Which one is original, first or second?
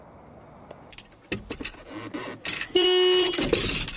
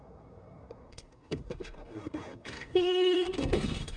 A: first